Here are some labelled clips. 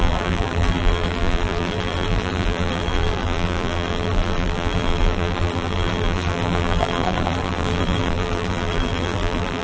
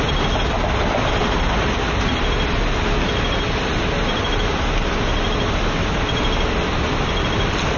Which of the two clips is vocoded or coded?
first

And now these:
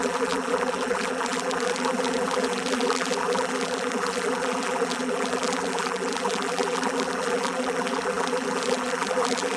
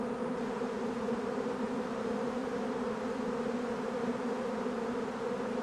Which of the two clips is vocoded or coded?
first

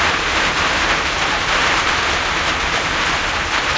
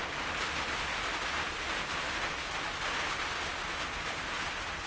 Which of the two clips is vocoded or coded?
first